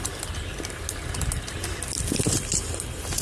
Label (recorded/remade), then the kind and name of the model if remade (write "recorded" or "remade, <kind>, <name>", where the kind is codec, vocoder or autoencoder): recorded